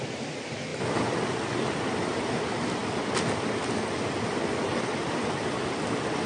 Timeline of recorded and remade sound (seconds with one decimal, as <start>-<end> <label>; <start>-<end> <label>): 0.0-6.3 recorded